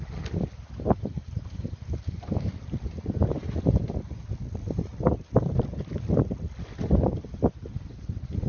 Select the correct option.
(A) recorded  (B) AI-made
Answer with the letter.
A